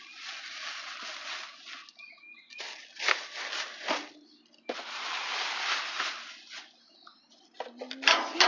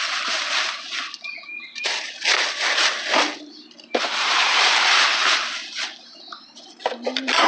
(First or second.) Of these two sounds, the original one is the first